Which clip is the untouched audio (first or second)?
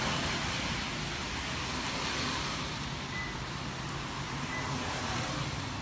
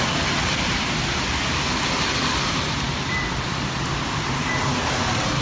first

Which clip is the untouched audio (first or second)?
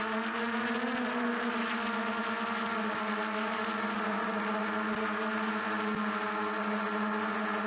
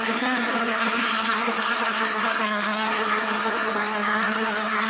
first